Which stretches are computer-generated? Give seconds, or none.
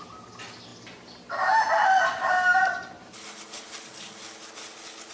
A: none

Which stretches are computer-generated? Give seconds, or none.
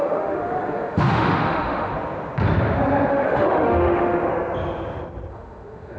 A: 0.0-1.9 (autoencoder, DAC-VAE); 3.1-4.3; 5.3-6.0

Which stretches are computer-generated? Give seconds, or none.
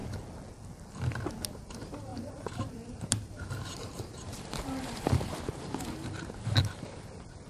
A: 1.5-7.5 (vocoder, BigVGAN v2)